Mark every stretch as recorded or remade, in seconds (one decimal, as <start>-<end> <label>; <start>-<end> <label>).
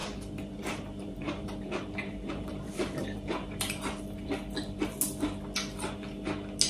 0.0-4.0 remade; 4.0-6.7 recorded